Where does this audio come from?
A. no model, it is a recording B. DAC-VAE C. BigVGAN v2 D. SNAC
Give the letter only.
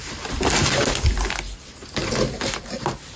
A